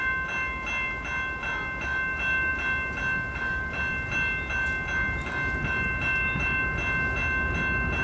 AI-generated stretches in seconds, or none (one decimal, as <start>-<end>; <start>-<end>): none